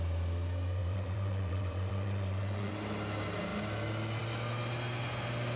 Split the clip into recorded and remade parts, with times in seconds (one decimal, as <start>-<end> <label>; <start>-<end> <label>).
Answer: 0.0-0.8 recorded; 0.8-2.7 remade; 2.7-5.6 recorded